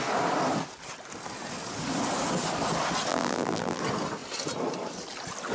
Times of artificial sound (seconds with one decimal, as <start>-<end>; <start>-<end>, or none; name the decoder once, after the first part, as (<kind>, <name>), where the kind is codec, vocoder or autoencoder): 3.1-3.8 (vocoder, BigVGAN v2)